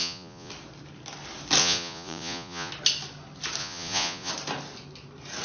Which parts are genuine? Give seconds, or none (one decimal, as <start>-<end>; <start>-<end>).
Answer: 0.5-1.6; 2.7-3.6; 4.3-5.4